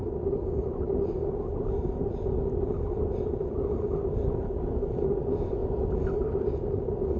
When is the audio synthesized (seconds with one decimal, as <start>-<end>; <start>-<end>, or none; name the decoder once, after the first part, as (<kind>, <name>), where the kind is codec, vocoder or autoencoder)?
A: none